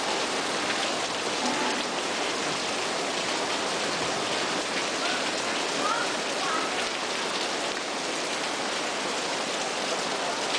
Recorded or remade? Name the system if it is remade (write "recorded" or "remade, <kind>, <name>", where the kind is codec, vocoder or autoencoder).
recorded